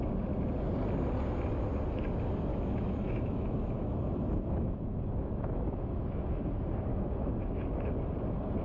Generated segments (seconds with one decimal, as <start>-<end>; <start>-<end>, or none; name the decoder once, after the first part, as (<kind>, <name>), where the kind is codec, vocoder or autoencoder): 2.5-6.5 (autoencoder, DAC-VAE); 6.9-7.9